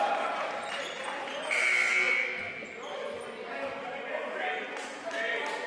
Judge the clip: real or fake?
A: real